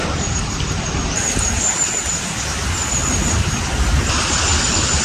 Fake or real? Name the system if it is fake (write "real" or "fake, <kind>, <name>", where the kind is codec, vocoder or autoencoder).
real